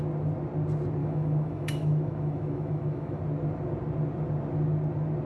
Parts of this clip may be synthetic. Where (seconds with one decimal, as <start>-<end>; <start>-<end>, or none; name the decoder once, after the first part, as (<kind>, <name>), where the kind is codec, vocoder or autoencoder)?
1.0-3.2 (autoencoder, DAC-VAE)